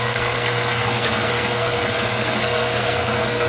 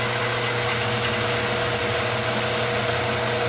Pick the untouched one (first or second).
second